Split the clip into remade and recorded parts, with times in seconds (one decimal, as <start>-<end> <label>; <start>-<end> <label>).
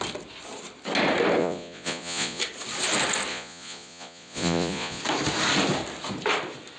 0.0-1.4 recorded; 1.4-2.4 remade; 2.4-3.3 recorded; 3.3-5.0 remade; 5.0-6.8 recorded